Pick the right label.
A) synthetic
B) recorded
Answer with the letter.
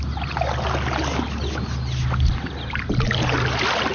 B